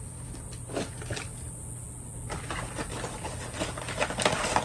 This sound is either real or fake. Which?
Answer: real